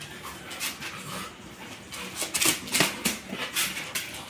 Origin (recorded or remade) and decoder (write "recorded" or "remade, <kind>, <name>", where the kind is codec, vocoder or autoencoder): recorded